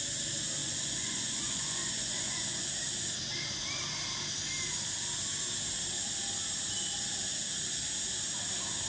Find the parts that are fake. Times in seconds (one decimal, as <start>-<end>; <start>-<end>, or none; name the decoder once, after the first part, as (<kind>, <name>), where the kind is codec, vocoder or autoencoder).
0.6-2.7 (vocoder, Vocos)